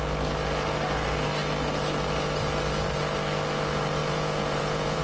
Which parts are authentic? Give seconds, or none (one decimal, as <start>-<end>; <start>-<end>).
0.0-4.0